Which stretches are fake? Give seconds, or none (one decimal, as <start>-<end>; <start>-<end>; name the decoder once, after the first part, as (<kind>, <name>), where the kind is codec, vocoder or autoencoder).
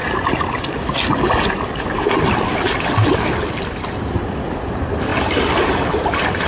none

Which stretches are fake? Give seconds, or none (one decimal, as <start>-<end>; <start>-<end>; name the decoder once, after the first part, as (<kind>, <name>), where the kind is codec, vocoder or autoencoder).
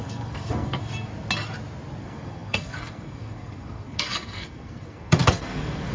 0.0-1.1 (codec, SNAC); 2.0-5.9